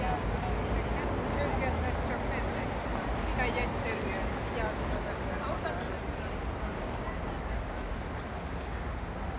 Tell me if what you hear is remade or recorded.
recorded